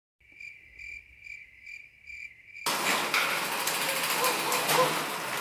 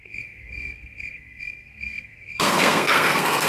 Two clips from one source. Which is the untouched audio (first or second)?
first